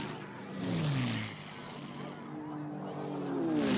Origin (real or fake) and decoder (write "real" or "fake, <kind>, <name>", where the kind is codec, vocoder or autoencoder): real